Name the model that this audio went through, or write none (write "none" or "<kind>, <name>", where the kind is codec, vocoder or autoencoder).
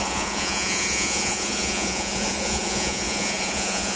vocoder, Vocos